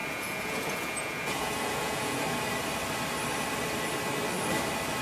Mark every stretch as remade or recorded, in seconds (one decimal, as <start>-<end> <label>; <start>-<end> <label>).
0.0-2.2 remade; 2.2-5.0 recorded